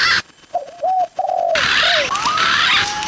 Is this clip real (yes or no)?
no